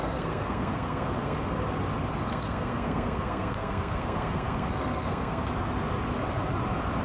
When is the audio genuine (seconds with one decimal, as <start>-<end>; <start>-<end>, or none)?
1.4-2.3; 5.5-7.0